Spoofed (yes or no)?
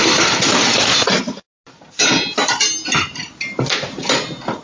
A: no